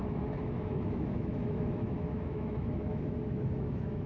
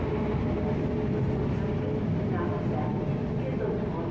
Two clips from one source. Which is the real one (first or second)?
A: second